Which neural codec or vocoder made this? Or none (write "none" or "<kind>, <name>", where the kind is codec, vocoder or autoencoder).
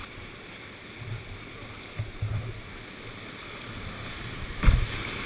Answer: none